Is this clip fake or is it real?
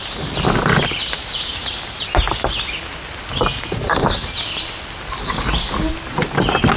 real